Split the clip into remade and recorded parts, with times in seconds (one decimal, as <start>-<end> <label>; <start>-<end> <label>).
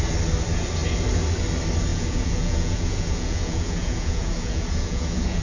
0.0-1.9 recorded; 1.9-5.4 remade